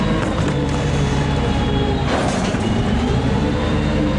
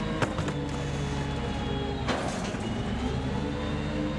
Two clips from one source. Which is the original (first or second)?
second